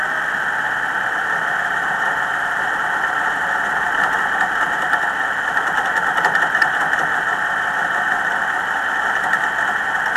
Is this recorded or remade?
recorded